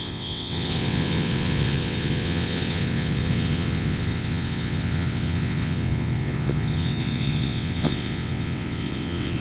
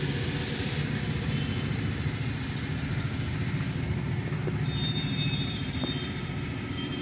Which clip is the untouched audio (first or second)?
second